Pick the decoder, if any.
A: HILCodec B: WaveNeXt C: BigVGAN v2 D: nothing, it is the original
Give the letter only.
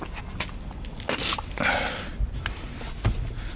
D